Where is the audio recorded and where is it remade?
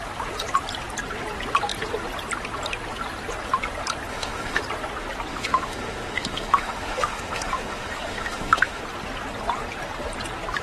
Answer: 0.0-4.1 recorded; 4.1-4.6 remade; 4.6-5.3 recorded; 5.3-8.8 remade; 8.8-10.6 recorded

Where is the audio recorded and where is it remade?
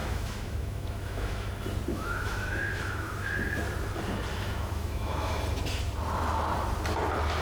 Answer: 0.0-1.5 remade; 1.5-1.9 recorded; 1.9-3.3 remade; 3.3-4.3 recorded; 4.3-5.4 remade; 5.4-7.4 recorded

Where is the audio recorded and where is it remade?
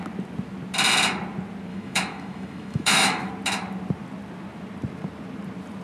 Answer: 0.0-1.7 recorded; 1.7-3.3 remade; 3.3-5.8 recorded